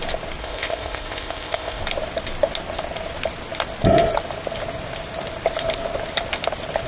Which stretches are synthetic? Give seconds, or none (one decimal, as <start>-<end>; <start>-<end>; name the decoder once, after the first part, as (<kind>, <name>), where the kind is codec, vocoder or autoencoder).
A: 0.4-1.8 (codec, ZipCodec)